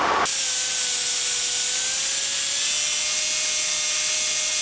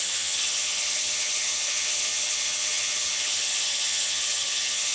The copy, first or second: second